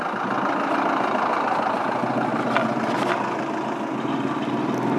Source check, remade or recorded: recorded